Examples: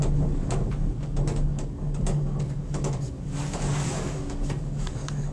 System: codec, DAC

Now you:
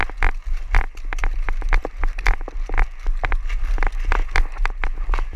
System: none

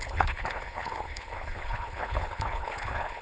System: codec, HILCodec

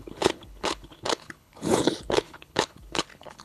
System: codec, HILCodec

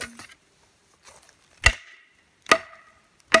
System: none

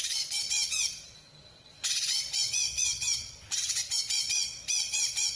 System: vocoder, Vocos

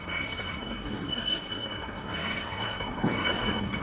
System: codec, SNAC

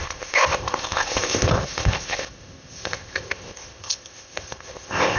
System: codec, ZipCodec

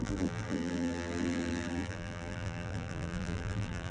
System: vocoder, BigVGAN v2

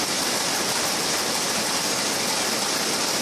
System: none